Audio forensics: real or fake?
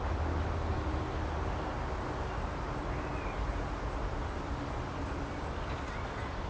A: real